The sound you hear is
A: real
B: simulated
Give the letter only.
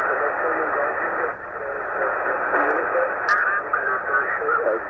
A